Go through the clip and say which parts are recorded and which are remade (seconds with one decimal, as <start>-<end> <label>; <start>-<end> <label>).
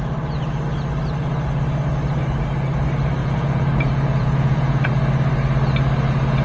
0.0-3.2 recorded; 3.2-4.9 remade; 4.9-6.4 recorded